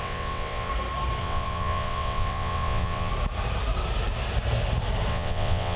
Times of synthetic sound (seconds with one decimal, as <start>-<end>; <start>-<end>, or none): 0.0-0.7; 1.2-3.1; 5.1-5.8